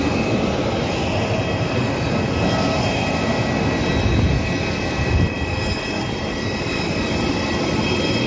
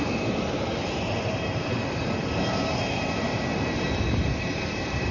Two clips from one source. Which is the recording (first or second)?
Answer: first